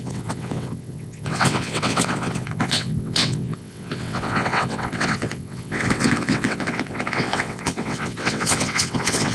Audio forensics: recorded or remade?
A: remade